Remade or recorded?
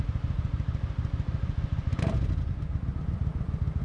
remade